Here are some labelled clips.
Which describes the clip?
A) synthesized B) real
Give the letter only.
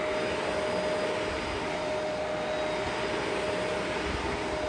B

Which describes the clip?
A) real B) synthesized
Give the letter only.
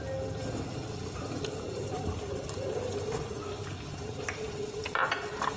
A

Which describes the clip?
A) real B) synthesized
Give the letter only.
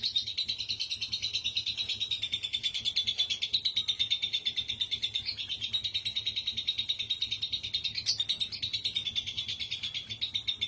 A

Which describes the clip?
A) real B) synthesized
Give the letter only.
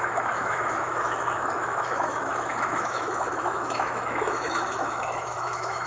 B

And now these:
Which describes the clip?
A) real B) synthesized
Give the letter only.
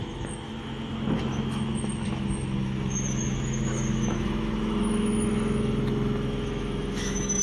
B